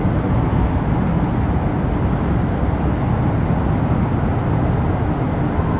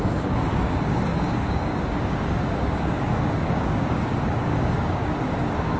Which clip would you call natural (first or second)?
first